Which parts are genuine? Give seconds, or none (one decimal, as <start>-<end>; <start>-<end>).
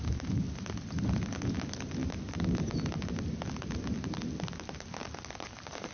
0.0-5.9